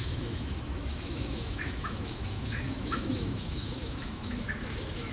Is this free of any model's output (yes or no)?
no